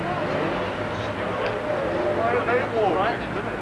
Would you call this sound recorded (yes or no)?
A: yes